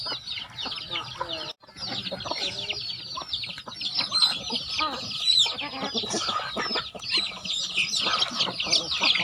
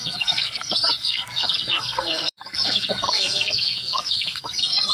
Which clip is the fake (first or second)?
second